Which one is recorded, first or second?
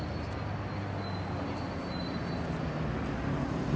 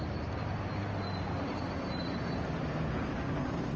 first